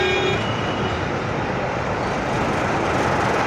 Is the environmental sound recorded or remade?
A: recorded